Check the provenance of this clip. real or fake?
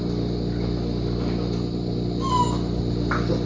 real